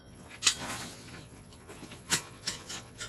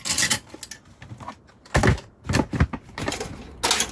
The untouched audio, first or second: second